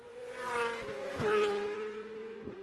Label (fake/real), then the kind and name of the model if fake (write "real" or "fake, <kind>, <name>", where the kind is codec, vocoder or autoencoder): fake, vocoder, Vocos